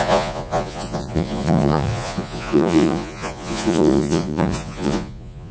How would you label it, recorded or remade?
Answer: remade